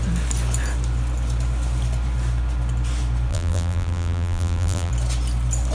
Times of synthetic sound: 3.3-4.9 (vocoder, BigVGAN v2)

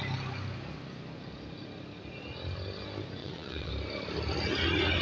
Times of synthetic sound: 3.2-3.7 (vocoder, WaveNeXt)

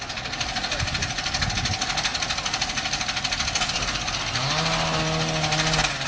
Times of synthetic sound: none

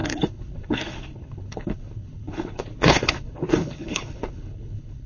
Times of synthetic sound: 0.0-5.1 (codec, HILCodec)